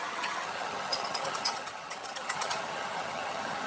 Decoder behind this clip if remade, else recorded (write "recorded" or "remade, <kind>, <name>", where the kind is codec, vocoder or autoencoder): remade, vocoder, HiFi-GAN